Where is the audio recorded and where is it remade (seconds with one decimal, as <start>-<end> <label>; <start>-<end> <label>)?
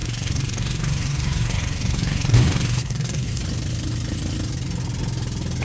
0.0-3.4 remade; 3.4-5.6 recorded